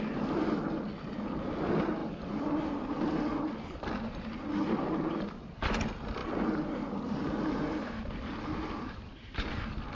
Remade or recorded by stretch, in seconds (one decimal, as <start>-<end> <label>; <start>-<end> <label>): 0.0-9.9 recorded